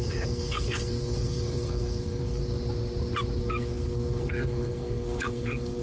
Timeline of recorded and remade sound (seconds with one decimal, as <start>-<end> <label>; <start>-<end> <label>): 0.0-2.4 remade; 2.4-3.4 recorded; 3.4-5.8 remade